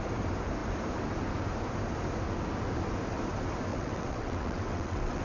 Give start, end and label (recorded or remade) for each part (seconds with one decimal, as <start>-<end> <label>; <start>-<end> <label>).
0.0-3.7 recorded; 3.7-5.2 remade